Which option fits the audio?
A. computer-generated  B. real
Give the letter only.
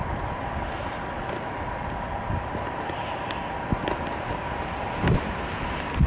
B